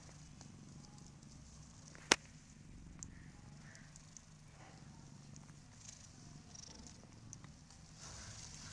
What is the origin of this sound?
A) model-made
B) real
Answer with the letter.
B